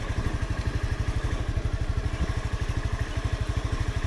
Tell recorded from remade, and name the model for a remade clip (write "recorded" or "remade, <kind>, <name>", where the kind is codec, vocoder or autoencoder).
recorded